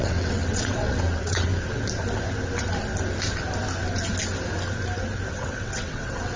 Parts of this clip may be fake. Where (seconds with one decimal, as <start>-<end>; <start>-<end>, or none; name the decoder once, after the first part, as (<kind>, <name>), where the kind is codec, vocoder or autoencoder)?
0.0-1.5 (vocoder, WaveNeXt); 5.3-6.4